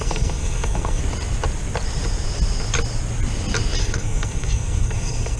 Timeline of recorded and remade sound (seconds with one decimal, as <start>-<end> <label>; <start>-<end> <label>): 0.0-1.0 remade; 1.0-3.8 recorded; 3.8-5.4 remade